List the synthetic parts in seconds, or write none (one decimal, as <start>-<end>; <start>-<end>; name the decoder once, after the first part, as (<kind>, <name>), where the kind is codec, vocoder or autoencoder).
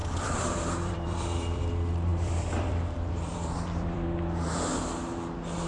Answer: 0.0-1.7 (vocoder, BigVGAN v2); 2.1-4.5